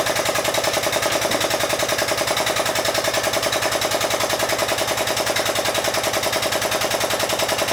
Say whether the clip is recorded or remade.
recorded